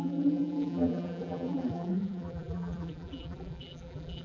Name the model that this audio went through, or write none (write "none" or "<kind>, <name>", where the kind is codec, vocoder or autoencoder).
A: vocoder, BigVGAN v2